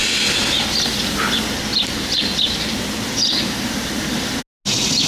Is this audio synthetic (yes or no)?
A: no